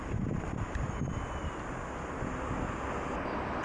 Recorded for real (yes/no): yes